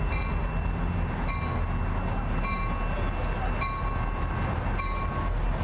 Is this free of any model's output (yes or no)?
yes